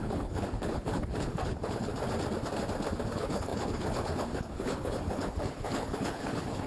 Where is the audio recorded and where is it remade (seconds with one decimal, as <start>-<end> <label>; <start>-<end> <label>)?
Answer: 0.0-1.9 remade; 1.9-3.1 recorded; 3.1-6.7 remade